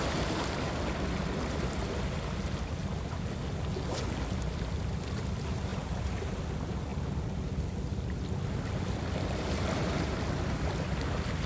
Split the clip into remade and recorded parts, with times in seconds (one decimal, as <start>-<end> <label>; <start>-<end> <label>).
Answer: 0.0-5.7 recorded; 5.7-6.4 remade; 6.4-11.5 recorded

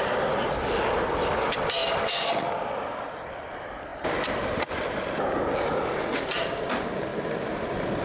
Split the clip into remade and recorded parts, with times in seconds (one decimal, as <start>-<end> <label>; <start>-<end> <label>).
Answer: 0.0-1.8 recorded; 1.8-2.3 remade; 2.3-3.9 recorded; 3.9-4.4 remade; 4.4-8.0 recorded

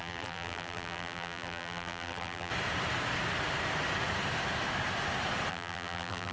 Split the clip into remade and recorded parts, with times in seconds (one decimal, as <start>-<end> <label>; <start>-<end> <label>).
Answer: 0.0-2.5 remade; 2.5-5.5 recorded; 5.5-6.3 remade